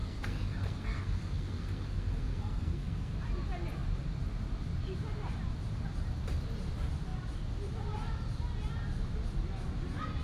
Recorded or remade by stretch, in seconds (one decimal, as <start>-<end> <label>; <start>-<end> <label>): 0.0-3.2 remade; 3.2-10.2 recorded